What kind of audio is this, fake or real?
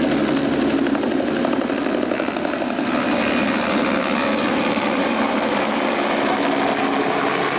real